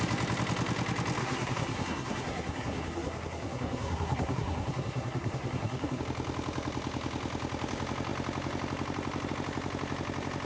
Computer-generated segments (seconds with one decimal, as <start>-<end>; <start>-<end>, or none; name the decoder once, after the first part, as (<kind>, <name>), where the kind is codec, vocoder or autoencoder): 1.2-6.0 (codec, SNAC)